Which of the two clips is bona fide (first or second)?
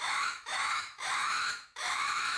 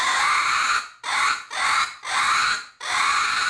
second